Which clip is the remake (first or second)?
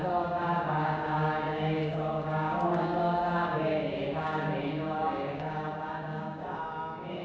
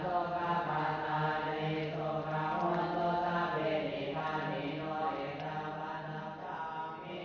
first